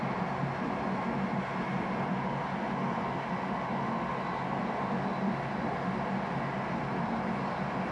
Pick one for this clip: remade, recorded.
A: recorded